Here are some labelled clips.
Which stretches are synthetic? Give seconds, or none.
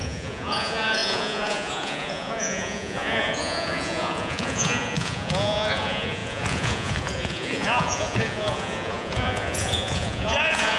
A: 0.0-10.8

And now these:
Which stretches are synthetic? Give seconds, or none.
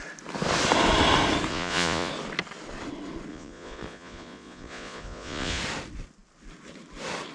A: 1.5-2.1; 3.3-5.6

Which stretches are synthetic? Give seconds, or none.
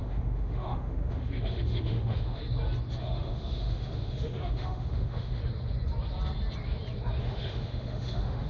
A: 0.0-2.4; 3.0-5.4; 7.2-8.5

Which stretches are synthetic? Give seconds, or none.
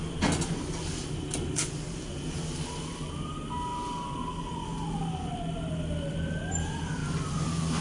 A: none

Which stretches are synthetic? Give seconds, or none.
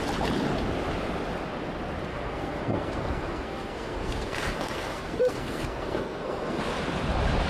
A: 2.1-6.6